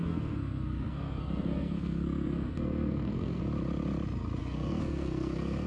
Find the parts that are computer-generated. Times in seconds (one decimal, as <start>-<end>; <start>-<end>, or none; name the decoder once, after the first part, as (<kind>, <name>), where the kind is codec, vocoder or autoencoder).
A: 0.0-3.4 (codec, SNAC); 4.4-5.7